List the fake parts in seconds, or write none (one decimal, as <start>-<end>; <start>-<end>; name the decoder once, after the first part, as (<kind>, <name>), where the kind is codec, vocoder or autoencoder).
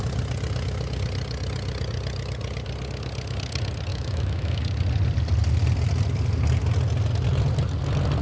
3.9-4.6 (autoencoder, DAC-VAE)